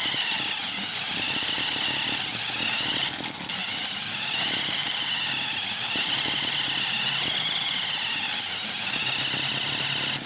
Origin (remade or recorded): recorded